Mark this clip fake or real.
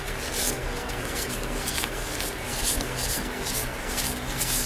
fake